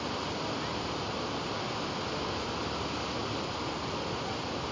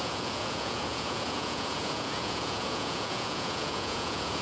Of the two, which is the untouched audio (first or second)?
first